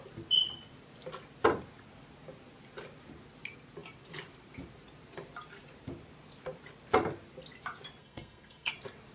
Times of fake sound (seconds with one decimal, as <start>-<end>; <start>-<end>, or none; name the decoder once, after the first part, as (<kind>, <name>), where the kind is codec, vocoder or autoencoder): 8.0-8.7 (codec, SNAC)